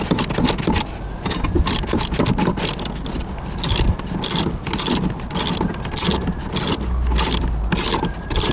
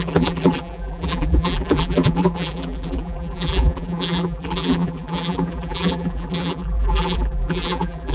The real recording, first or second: first